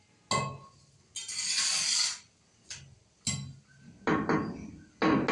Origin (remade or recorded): recorded